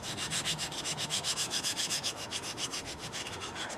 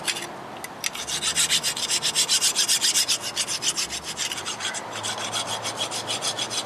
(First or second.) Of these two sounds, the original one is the second